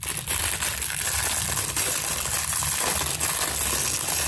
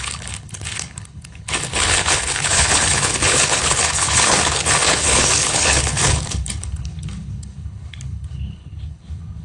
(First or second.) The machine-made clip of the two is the second